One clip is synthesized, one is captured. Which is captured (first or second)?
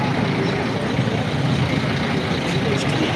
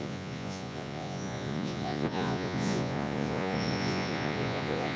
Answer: first